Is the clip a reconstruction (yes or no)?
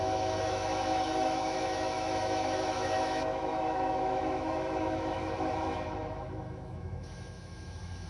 yes